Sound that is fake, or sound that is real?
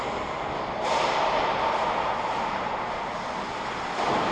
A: real